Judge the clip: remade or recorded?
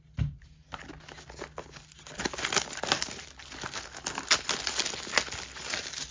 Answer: recorded